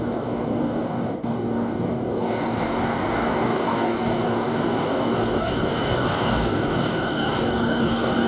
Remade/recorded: remade